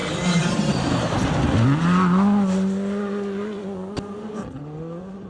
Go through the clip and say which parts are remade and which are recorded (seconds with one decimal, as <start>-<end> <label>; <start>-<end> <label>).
0.0-5.3 recorded